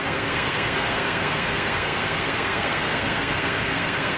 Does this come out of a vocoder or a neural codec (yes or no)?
yes